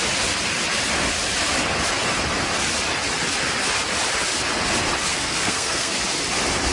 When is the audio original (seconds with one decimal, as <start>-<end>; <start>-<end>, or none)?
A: 0.0-5.1; 5.9-6.7